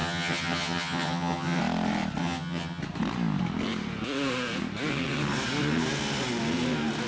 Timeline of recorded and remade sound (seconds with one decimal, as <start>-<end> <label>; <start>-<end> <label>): 0.0-1.6 remade; 1.6-2.2 recorded; 2.2-2.8 remade; 2.8-7.1 recorded